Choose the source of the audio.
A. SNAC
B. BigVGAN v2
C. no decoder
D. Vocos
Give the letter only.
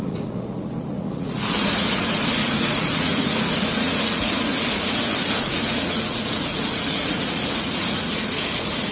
D